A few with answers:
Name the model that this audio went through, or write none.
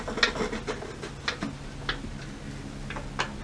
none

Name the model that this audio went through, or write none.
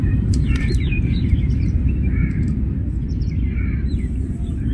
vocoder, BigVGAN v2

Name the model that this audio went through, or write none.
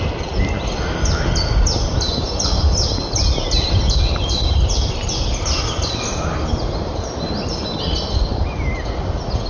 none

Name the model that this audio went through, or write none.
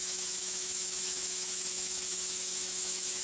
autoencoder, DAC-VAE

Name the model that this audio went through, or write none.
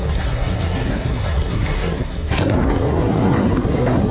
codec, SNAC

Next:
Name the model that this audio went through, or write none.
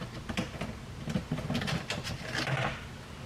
none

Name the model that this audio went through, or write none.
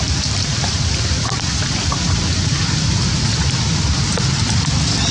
none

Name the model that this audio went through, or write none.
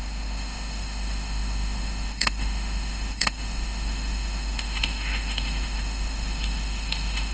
autoencoder, DAC-VAE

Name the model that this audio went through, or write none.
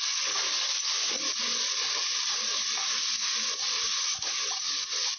none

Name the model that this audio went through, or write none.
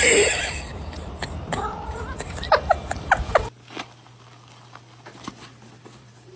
vocoder, BigVGAN v2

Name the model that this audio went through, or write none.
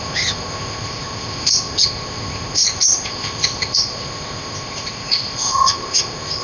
codec, ZipCodec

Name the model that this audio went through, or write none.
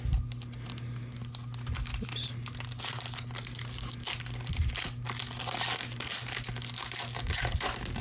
none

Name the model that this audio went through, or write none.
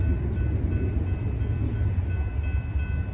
none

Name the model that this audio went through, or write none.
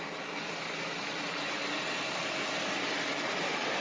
none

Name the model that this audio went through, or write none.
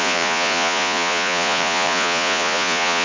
vocoder, Vocos